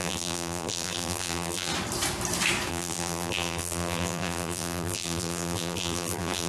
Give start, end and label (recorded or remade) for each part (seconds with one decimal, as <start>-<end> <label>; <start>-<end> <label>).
0.0-1.7 remade; 1.7-2.7 recorded; 2.7-6.5 remade